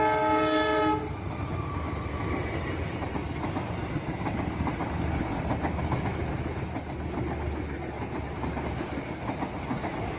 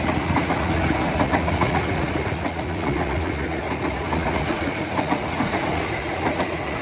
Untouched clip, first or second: first